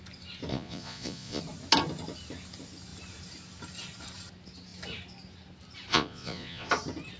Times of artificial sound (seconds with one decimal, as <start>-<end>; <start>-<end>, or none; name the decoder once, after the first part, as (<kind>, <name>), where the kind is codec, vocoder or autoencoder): 0.5-1.4 (vocoder, Vocos); 5.9-6.7